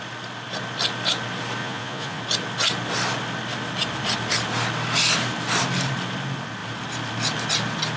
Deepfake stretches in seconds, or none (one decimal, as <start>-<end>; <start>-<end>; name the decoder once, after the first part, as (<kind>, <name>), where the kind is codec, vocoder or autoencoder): 1.6-2.2 (vocoder, Vocos)